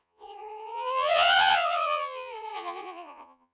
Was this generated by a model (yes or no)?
yes